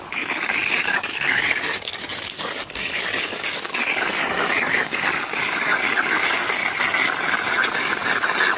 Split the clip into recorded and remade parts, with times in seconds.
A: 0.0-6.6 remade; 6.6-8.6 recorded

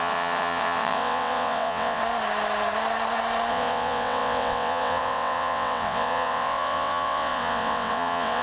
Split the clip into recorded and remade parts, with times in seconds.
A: 0.0-2.0 remade; 2.0-3.5 recorded; 3.5-8.4 remade